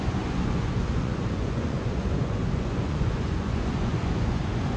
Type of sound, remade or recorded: remade